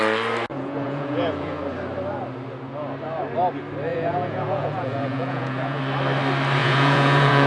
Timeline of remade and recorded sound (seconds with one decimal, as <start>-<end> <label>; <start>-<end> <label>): 0.0-0.5 recorded; 0.5-1.6 remade; 1.6-3.9 recorded; 3.9-5.8 remade; 5.8-6.6 recorded; 6.6-7.5 remade